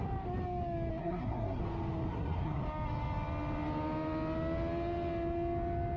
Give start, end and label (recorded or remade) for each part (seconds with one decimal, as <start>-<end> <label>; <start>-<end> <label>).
0.0-1.0 recorded; 1.0-1.6 remade; 1.6-2.1 recorded; 2.1-2.6 remade; 2.6-6.0 recorded